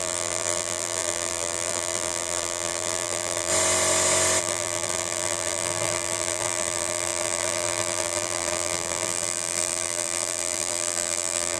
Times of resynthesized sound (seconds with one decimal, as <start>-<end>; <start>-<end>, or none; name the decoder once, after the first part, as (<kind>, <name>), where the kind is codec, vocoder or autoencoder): 0.0-3.5 (vocoder, BigVGAN v2); 4.4-11.6